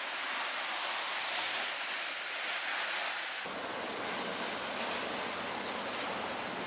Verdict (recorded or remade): recorded